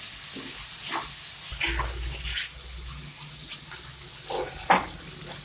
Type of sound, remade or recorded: recorded